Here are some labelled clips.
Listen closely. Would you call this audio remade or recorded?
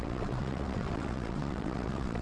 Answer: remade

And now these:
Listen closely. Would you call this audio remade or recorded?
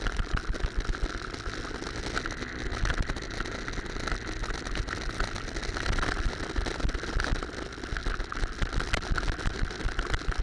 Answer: recorded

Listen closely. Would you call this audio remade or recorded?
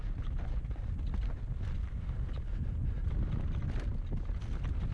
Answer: recorded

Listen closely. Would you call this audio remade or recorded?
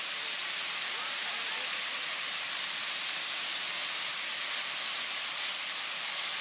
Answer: recorded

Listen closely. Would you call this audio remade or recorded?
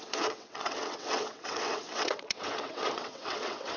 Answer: remade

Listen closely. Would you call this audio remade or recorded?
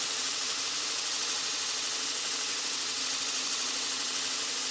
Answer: remade